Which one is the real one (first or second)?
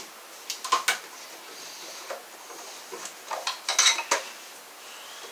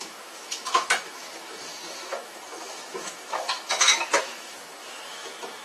first